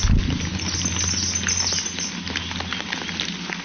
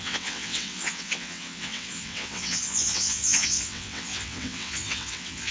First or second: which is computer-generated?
second